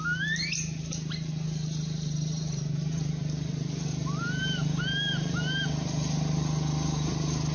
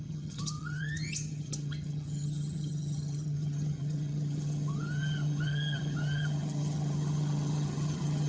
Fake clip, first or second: second